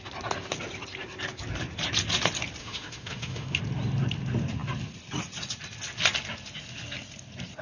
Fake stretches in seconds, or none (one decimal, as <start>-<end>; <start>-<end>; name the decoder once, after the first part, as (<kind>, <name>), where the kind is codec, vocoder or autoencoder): 2.6-3.6 (autoencoder, DAC-VAE)